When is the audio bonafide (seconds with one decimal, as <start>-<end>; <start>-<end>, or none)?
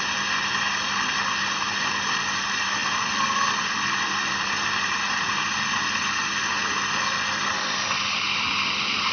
0.0-9.1